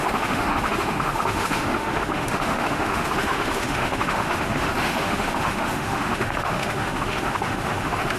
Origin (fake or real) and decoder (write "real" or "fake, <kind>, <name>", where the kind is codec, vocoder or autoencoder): fake, autoencoder, DAC-VAE